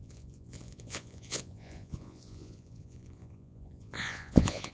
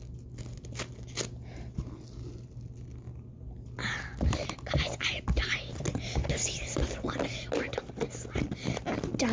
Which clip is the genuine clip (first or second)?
second